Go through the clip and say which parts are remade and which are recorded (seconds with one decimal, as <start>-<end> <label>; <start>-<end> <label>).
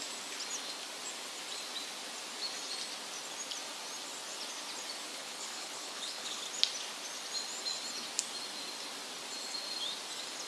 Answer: 0.0-5.1 recorded; 5.1-6.4 remade; 6.4-10.5 recorded